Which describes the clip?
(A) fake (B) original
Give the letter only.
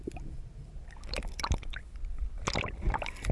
B